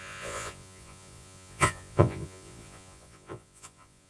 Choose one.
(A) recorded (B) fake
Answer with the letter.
B